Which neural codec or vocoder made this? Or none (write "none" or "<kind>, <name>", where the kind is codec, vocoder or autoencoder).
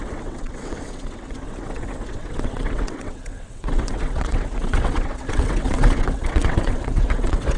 vocoder, WaveNeXt